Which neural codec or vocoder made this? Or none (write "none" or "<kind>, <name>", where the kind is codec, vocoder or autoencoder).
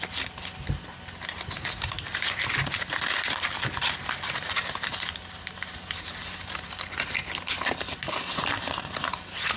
none